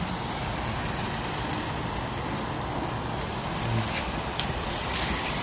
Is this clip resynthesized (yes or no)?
no